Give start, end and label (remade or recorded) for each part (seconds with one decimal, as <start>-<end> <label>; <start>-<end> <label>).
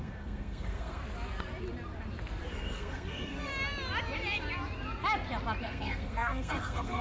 0.0-1.0 remade; 1.0-2.5 recorded; 2.5-3.5 remade; 3.5-5.6 recorded; 5.6-7.0 remade